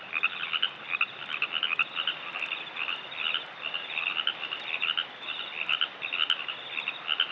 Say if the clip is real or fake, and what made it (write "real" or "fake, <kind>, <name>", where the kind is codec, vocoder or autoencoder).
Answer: real